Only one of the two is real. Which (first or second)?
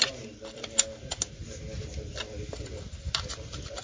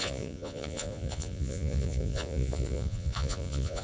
first